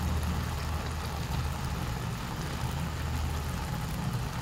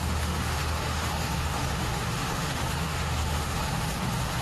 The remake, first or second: second